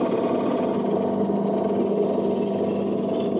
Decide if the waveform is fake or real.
real